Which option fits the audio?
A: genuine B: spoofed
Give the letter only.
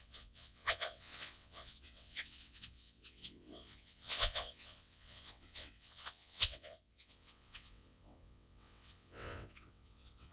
B